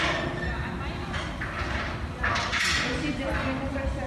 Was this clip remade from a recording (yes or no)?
no